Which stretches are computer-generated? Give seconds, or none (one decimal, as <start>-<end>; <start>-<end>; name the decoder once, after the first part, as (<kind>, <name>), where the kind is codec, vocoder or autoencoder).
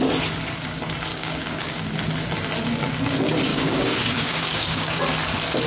1.1-1.9 (codec, DAC); 3.5-5.0